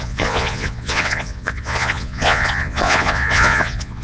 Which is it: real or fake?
fake